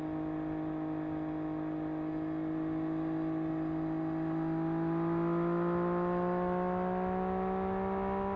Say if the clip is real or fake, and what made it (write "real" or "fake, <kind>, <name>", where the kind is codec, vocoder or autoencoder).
real